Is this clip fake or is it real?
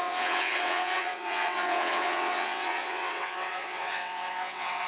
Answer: fake